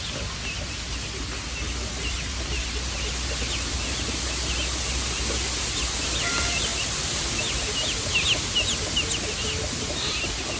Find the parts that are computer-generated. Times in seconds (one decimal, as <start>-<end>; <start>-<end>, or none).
none